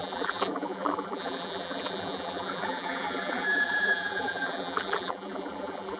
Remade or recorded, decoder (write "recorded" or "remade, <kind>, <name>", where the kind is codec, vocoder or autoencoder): remade, vocoder, BigVGAN v2